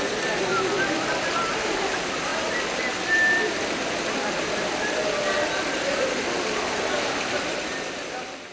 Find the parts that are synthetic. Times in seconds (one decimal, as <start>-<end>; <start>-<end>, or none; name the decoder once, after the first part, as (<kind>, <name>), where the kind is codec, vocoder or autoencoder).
none